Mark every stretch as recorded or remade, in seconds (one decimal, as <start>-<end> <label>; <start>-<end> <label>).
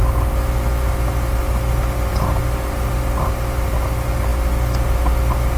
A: 0.0-5.6 recorded